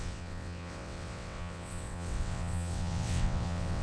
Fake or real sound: fake